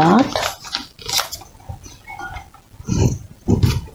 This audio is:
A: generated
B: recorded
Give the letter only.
B